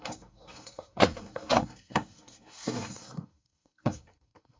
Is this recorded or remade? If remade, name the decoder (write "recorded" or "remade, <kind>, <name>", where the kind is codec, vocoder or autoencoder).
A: remade, codec, SNAC